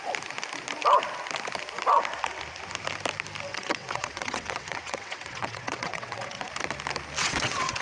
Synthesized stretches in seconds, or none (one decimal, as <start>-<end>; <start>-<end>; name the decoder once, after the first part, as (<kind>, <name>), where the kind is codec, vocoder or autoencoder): 3.5-6.5 (vocoder, WaveNeXt); 7.2-7.8